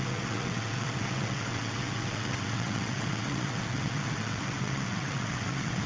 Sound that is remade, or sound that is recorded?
remade